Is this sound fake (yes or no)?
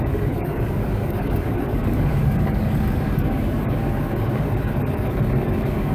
yes